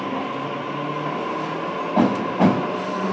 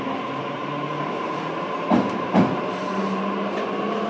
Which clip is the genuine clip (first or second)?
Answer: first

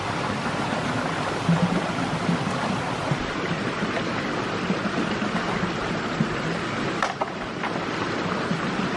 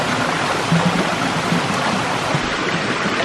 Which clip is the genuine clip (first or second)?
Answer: second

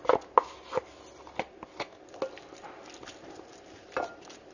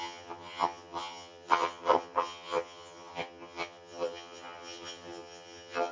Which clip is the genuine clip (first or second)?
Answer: first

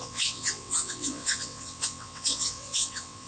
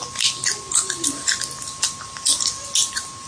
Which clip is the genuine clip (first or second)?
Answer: second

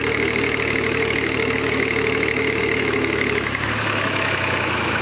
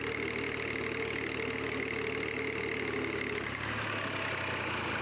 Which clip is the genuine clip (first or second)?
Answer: second